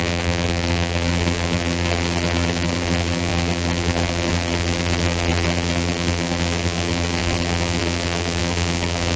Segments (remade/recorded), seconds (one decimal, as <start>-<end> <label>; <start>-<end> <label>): 0.0-9.2 remade